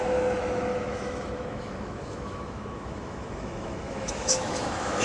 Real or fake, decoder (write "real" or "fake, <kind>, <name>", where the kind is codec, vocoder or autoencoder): fake, autoencoder, DAC-VAE